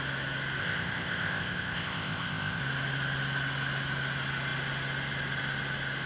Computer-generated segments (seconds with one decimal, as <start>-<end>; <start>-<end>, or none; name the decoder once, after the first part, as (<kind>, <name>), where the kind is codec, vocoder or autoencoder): 0.6-2.6 (codec, ZipCodec)